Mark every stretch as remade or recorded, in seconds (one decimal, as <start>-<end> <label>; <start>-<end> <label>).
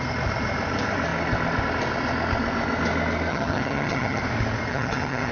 0.0-3.3 recorded; 3.3-4.2 remade; 4.2-4.7 recorded; 4.7-5.3 remade